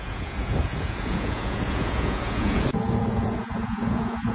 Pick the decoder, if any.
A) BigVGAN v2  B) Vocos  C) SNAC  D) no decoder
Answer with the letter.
B